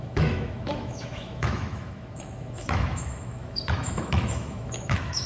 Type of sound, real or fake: fake